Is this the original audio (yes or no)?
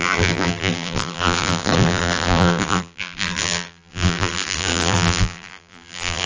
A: no